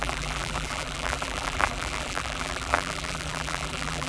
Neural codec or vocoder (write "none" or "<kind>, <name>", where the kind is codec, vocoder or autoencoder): vocoder, BigVGAN v2